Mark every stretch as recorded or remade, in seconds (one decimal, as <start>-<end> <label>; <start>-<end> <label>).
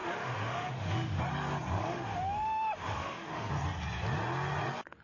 0.0-1.2 remade; 1.2-1.8 recorded; 1.8-3.5 remade; 3.5-5.0 recorded